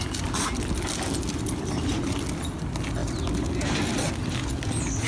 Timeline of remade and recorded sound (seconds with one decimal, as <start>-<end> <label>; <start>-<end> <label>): 0.0-5.1 recorded